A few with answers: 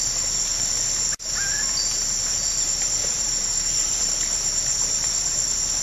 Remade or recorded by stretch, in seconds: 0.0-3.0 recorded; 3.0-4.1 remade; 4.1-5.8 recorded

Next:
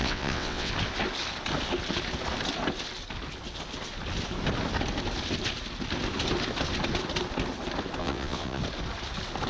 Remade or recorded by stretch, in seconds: 0.0-0.7 remade; 0.7-8.0 recorded; 8.0-8.6 remade; 8.6-9.5 recorded

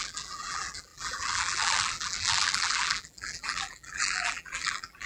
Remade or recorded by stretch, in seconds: 0.0-5.1 remade

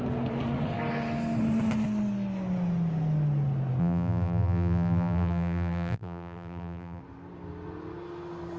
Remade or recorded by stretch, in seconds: 0.0-3.8 recorded; 3.8-7.0 remade; 7.0-8.6 recorded